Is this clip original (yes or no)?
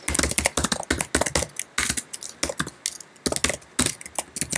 yes